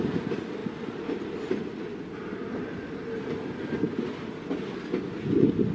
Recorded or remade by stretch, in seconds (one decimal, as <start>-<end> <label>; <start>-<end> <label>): 0.0-5.7 recorded